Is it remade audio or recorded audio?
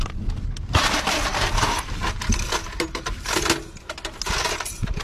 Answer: recorded